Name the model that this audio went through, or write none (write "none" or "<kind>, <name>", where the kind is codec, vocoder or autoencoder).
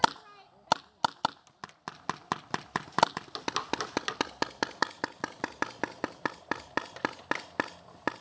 none